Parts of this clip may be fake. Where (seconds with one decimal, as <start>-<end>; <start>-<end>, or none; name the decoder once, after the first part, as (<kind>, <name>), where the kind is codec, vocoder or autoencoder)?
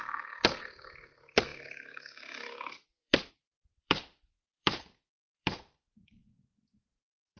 0.0-7.4 (vocoder, BigVGAN v2)